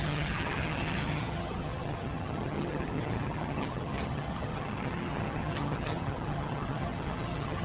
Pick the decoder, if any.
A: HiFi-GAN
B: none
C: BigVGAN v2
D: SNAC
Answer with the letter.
A